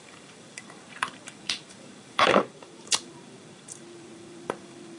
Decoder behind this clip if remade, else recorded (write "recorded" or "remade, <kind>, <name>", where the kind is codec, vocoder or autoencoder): remade, vocoder, BigVGAN v2